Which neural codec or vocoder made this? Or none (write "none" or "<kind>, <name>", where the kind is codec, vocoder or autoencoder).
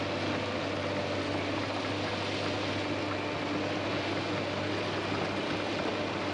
none